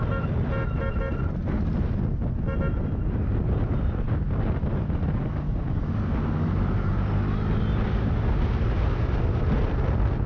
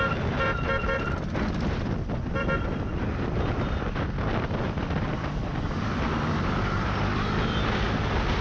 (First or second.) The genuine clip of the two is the first